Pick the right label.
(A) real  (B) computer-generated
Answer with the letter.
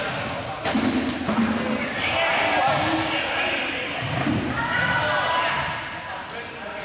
A